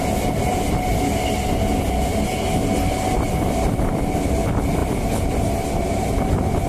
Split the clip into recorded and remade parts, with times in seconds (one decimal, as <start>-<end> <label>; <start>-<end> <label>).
0.0-6.7 recorded